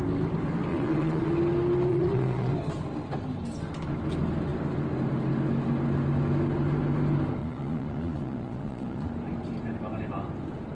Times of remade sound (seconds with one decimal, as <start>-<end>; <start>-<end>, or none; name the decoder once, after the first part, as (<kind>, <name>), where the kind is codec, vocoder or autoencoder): 0.7-1.3 (vocoder, Vocos); 1.9-2.5; 7.4-9.1